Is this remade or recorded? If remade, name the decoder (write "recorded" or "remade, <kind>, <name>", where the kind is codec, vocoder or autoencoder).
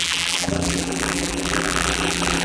remade, vocoder, BigVGAN v2